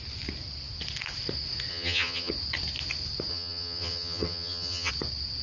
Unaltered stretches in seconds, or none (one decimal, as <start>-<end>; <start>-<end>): 0.0-1.7; 2.3-3.3; 4.9-5.4